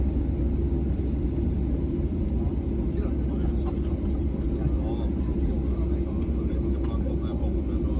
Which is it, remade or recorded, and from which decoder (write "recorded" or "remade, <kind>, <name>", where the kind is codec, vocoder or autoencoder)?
recorded